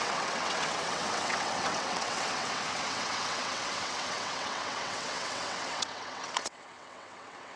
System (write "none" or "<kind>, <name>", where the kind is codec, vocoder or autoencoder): vocoder, WaveNeXt